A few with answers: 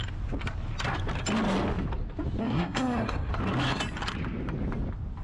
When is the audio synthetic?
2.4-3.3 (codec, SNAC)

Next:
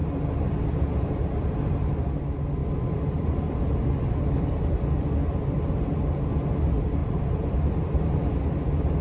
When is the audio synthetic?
none

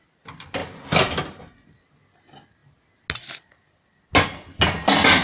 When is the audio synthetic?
none

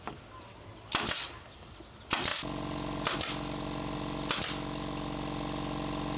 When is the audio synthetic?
none

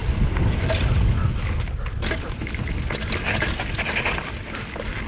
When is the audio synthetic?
none

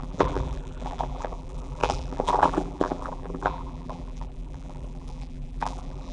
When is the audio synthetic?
0.0-6.1 (vocoder, BigVGAN v2)